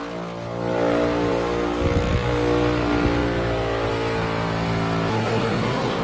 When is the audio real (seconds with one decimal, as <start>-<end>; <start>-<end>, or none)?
0.0-5.1